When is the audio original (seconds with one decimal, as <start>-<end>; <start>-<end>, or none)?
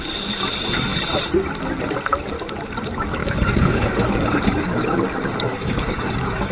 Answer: 0.0-3.2; 5.1-5.5